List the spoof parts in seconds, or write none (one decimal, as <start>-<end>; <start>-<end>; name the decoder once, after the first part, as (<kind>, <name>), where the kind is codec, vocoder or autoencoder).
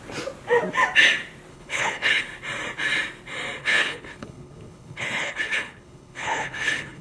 1.5-2.2 (codec, HILCodec); 3.6-7.0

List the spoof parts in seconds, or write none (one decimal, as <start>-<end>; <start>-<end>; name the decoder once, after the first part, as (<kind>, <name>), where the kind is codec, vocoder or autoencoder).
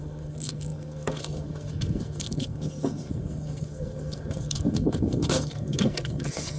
0.0-6.6 (codec, SNAC)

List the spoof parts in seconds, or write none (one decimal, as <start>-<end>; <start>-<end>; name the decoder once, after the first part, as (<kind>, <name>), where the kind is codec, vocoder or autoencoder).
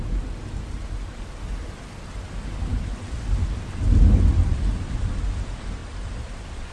2.7-3.8 (vocoder, BigVGAN v2); 4.5-5.2; 5.8-6.7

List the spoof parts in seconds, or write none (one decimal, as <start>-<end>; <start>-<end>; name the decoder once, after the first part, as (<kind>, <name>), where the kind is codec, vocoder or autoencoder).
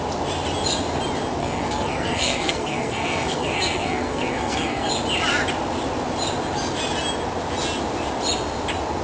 1.4-4.9 (codec, SNAC)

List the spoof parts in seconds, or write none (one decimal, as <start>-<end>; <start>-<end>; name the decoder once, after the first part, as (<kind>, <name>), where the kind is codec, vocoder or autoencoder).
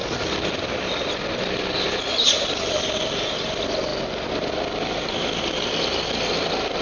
none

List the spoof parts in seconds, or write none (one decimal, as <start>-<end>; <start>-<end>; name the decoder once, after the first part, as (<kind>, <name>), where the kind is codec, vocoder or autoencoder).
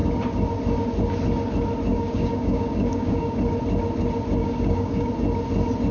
1.9-3.4 (codec, DAC); 4.4-5.1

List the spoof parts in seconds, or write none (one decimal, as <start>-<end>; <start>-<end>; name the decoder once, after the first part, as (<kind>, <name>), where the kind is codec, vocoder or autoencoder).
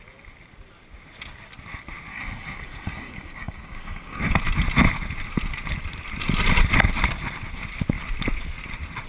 2.1-4.4 (codec, DAC)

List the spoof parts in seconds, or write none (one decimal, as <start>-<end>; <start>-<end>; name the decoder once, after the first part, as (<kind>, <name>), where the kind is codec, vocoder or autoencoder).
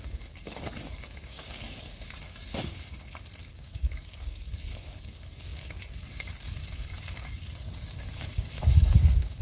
0.0-2.5 (codec, DAC); 3.4-9.4